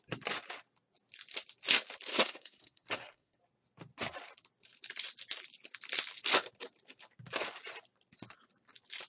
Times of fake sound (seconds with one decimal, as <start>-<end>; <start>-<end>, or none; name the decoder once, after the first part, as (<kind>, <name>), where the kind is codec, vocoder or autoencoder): 2.1-3.4 (codec, SNAC)